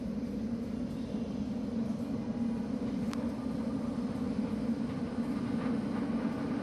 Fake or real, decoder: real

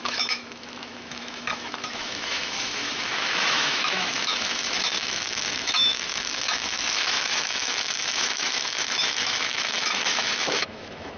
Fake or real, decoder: fake, autoencoder, DAC-VAE